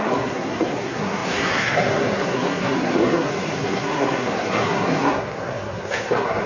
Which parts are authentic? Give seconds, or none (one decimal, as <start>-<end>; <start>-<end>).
none